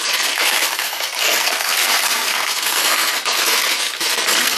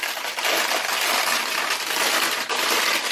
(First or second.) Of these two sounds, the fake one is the first